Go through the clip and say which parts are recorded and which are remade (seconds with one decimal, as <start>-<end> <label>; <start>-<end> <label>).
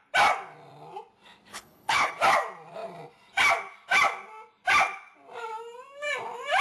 0.0-1.5 recorded; 1.5-2.1 remade; 2.1-6.6 recorded